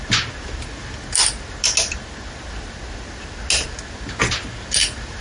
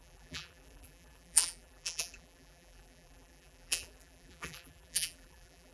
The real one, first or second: first